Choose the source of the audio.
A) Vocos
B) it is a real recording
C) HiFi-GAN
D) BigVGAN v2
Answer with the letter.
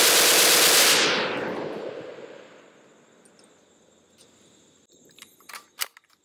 B